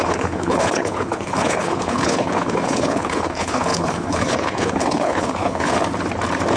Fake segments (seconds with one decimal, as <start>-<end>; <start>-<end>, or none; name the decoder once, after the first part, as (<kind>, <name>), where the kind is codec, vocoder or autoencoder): 0.0-5.7 (codec, HILCodec)